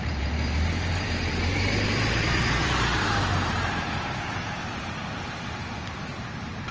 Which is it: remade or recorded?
remade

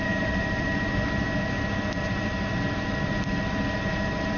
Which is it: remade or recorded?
remade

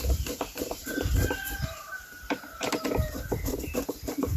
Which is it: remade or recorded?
remade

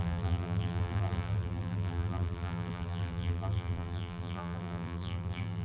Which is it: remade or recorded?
remade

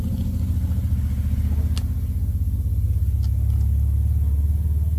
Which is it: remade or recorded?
recorded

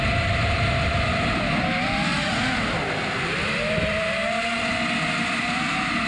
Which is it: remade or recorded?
recorded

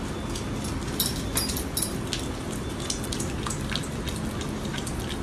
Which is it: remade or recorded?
recorded